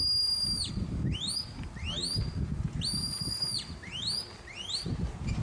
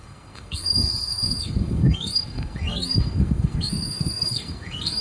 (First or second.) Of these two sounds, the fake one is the second